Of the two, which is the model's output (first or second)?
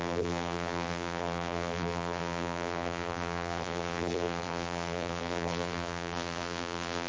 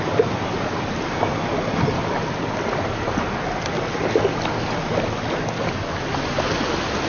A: first